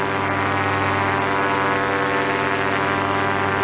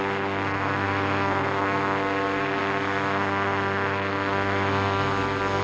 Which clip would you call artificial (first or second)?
second